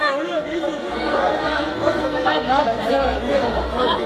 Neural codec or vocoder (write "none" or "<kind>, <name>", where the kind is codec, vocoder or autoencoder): codec, SNAC